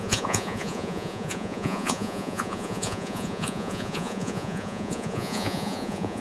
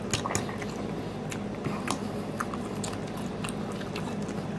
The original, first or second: second